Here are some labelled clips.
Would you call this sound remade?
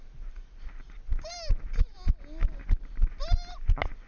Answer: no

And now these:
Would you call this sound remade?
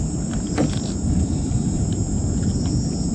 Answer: no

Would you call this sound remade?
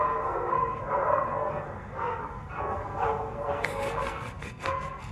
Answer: yes